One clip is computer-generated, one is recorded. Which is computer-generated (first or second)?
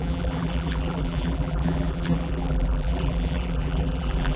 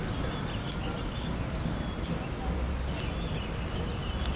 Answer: first